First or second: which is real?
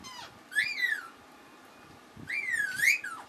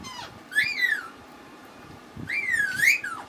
first